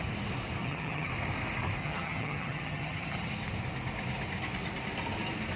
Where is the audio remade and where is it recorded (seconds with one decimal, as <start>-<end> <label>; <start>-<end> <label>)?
0.0-0.6 recorded; 0.6-1.1 remade; 1.1-1.8 recorded; 1.8-3.3 remade; 3.3-5.6 recorded